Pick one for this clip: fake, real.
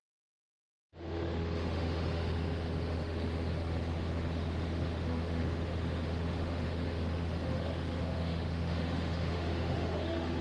fake